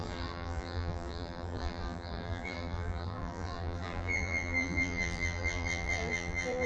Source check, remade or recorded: remade